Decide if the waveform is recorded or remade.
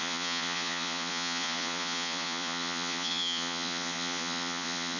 remade